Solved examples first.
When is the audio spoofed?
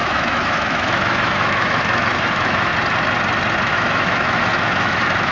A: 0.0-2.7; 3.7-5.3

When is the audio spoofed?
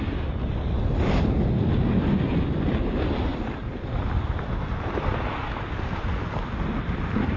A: none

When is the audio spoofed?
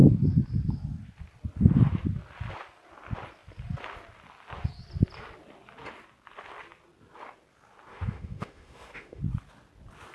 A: 7.9-9.2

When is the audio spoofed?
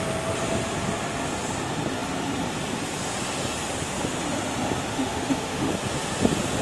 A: 4.9-5.7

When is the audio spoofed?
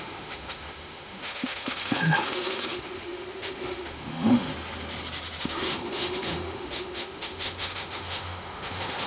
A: 0.0-4.5; 5.4-9.1